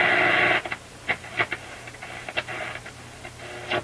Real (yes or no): yes